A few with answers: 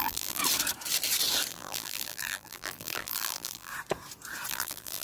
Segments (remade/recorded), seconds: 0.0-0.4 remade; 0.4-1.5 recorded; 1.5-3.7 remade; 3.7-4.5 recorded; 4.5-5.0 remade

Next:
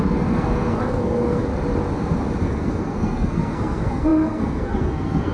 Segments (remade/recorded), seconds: 0.0-1.5 remade; 1.5-2.4 recorded; 2.4-5.3 remade

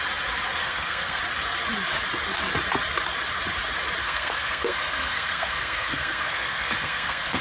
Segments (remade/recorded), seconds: 0.0-0.6 recorded; 0.6-1.2 remade; 1.2-4.0 recorded; 4.0-7.4 remade